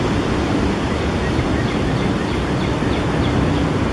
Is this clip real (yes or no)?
yes